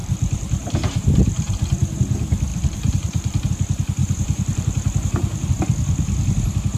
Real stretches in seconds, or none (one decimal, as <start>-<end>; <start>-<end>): 1.9-2.5; 3.5-4.0; 5.5-6.8